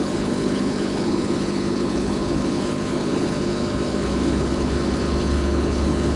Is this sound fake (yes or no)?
yes